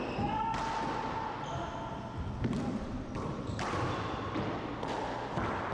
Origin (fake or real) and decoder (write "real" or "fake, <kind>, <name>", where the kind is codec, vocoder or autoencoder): real